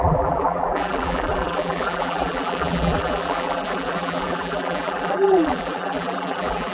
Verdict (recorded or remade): remade